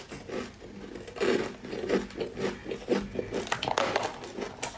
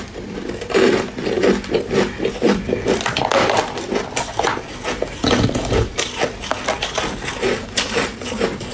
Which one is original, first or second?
first